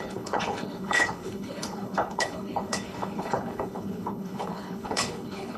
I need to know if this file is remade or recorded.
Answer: remade